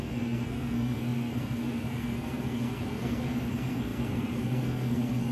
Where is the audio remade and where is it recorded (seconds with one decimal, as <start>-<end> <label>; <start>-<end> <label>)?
0.0-5.3 remade